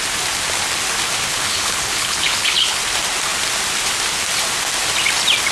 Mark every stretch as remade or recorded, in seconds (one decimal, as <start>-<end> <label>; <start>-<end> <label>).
0.0-1.3 recorded; 1.3-2.8 remade; 2.8-5.5 recorded